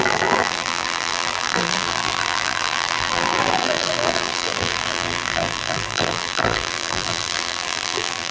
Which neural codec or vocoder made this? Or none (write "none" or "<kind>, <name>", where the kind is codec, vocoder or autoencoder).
vocoder, BigVGAN v2